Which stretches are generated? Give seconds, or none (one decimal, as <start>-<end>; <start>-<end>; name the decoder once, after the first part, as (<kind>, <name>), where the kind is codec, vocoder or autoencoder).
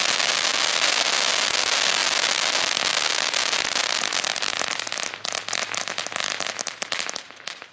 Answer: none